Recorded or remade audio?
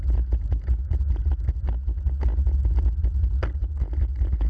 recorded